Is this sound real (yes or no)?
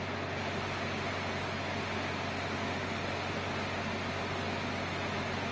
yes